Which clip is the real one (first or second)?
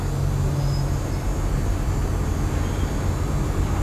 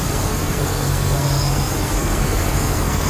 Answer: first